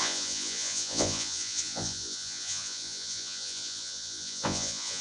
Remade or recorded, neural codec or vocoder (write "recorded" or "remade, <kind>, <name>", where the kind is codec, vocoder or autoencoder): remade, vocoder, Vocos